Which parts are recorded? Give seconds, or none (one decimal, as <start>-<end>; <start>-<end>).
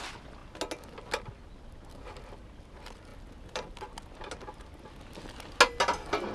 0.0-6.3